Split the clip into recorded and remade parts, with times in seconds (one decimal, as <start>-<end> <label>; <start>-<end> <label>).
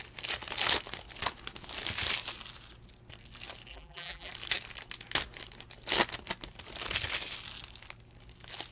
0.0-3.7 recorded; 3.7-4.3 remade; 4.3-8.7 recorded